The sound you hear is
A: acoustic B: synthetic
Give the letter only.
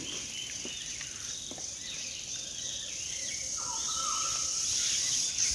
B